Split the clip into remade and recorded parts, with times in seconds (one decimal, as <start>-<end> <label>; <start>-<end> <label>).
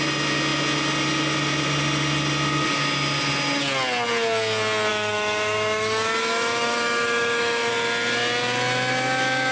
0.0-4.9 recorded; 4.9-7.7 remade; 7.7-9.5 recorded